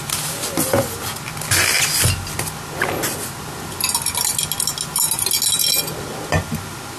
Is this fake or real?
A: real